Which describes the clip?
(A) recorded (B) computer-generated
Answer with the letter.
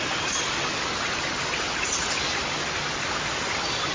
A